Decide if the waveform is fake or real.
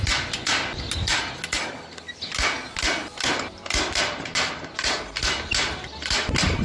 real